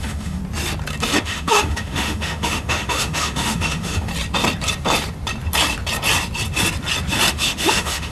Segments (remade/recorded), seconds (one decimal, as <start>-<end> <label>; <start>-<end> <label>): 0.0-0.4 remade; 0.4-1.2 recorded; 1.2-4.1 remade; 4.1-7.3 recorded; 7.3-8.1 remade